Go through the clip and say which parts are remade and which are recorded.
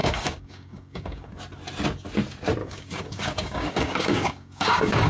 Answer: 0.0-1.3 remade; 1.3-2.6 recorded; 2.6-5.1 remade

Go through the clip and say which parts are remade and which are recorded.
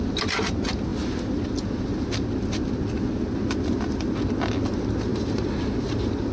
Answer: 0.0-5.1 recorded; 5.1-6.3 remade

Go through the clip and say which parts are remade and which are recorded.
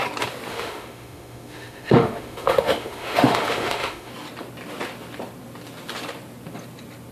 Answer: 0.0-0.5 recorded; 0.5-4.1 remade; 4.1-7.1 recorded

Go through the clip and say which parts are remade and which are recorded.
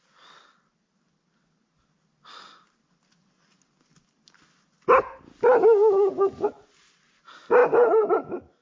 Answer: 0.0-8.6 recorded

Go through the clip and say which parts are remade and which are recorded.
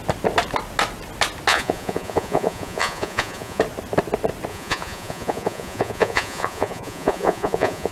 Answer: 0.0-1.5 recorded; 1.5-3.6 remade; 3.6-4.5 recorded; 4.5-7.9 remade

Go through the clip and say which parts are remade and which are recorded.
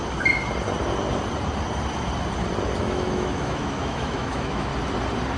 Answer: 0.0-2.8 recorded; 2.8-4.7 remade; 4.7-5.4 recorded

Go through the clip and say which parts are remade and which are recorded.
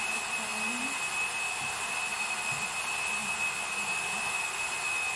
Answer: 0.0-5.2 recorded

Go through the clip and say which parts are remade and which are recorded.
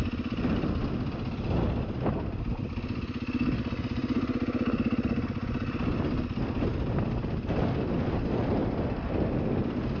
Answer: 0.0-10.0 recorded